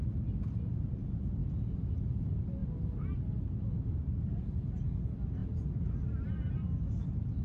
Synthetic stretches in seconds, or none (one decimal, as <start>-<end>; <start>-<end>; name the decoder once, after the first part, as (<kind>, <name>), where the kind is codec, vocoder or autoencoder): none